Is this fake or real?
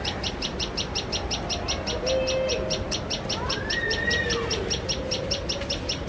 real